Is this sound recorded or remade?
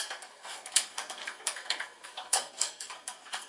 remade